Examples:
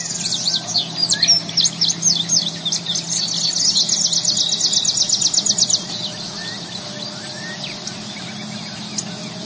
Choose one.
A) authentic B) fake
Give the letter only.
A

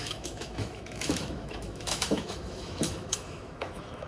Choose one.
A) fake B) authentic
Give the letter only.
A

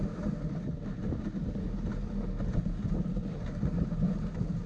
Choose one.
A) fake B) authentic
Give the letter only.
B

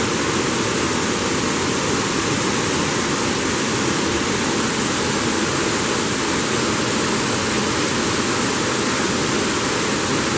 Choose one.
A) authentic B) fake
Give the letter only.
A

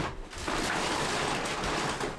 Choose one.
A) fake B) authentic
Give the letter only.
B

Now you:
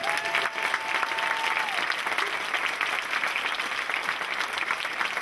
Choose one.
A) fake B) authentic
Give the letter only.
B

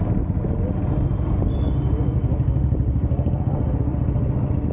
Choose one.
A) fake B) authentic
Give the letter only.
B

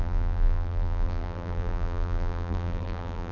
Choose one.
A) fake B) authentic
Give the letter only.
A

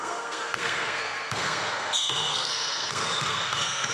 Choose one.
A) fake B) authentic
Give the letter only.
A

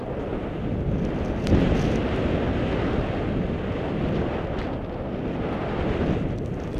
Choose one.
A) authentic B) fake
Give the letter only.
A